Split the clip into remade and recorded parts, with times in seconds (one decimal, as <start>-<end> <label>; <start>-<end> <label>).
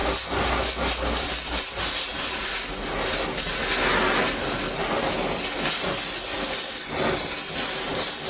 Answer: 0.0-8.3 recorded